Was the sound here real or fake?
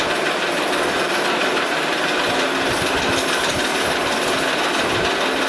real